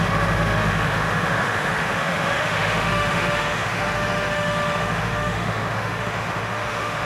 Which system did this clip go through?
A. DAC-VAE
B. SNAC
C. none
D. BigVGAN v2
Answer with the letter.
A